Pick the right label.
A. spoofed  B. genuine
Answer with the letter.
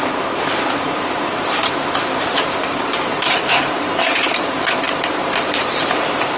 A